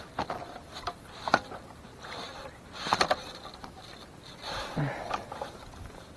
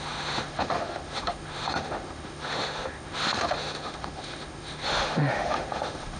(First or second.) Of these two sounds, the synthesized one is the second